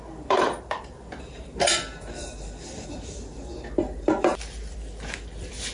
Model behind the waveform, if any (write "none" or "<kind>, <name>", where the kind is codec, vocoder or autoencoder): vocoder, BigVGAN v2